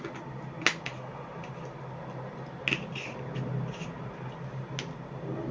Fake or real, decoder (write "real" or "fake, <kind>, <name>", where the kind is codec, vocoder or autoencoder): real